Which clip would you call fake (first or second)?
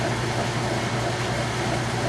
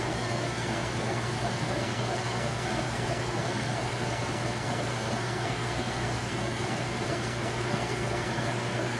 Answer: second